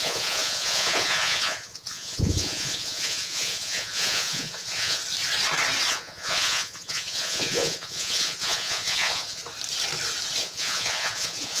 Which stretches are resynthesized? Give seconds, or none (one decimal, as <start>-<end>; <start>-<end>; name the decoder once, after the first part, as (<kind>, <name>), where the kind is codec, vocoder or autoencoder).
0.0-5.0 (vocoder, Vocos); 5.9-9.4; 10.4-11.6